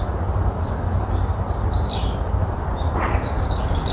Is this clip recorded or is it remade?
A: recorded